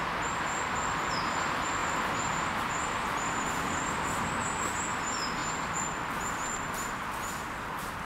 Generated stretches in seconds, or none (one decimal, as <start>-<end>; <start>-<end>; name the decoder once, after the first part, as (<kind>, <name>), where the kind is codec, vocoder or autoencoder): none

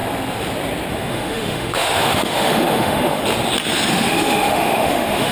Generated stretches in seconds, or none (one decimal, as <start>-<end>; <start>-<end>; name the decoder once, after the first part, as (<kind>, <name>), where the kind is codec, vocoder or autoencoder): 0.9-3.2 (autoencoder, DAC-VAE); 3.9-5.3